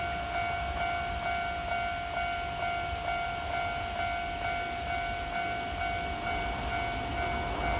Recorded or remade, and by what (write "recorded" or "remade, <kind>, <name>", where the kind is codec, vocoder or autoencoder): recorded